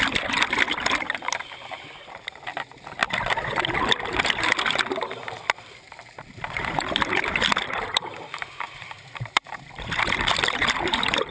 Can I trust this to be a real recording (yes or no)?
no